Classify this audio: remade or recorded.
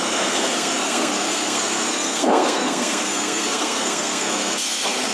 remade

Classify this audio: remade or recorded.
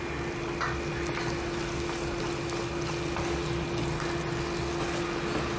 recorded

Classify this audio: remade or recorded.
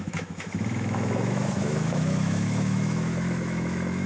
remade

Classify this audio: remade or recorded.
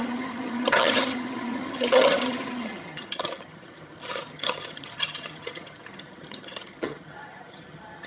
remade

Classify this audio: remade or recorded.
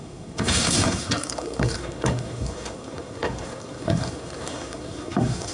remade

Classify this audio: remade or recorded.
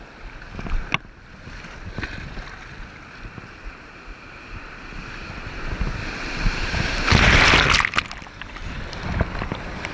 recorded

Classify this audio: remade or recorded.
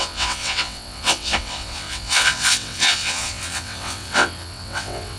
remade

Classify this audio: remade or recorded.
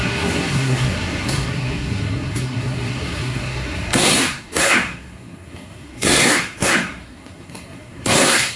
remade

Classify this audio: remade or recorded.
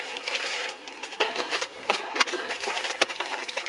remade